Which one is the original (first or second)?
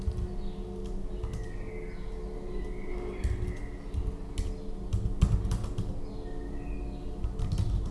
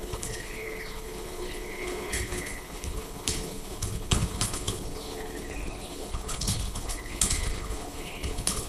first